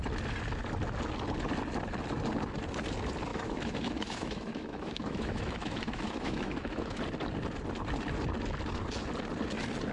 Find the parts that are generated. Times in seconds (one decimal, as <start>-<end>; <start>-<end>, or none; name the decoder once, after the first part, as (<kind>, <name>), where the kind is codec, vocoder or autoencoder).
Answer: 3.3-7.0 (autoencoder, DAC-VAE)